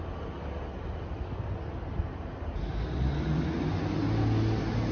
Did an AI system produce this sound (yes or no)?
no